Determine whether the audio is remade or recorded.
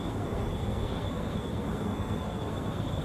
remade